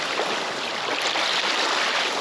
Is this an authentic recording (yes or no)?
yes